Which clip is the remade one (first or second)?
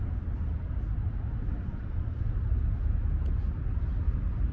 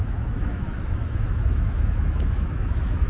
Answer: second